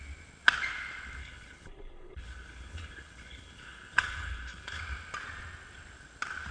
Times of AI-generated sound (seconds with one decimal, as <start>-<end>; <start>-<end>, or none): 1.2-4.8